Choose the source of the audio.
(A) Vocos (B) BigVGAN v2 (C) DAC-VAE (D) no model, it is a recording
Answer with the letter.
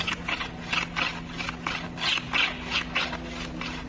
D